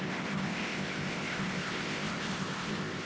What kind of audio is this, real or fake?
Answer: fake